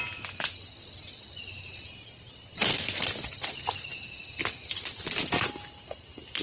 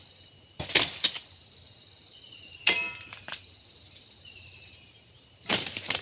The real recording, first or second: first